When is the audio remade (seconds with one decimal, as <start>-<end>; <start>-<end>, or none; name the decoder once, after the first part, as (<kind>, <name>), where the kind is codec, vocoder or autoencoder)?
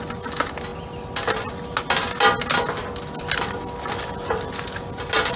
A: none